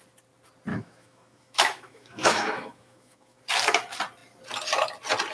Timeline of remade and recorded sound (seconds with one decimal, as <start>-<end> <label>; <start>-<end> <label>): 0.0-0.7 recorded; 0.7-3.4 remade; 3.4-5.3 recorded